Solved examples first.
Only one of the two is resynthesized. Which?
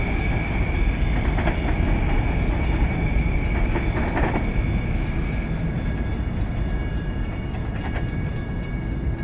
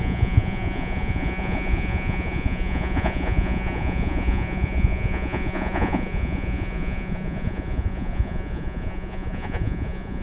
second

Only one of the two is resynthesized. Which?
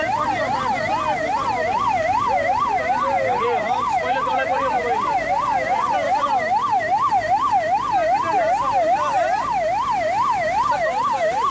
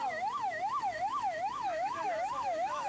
second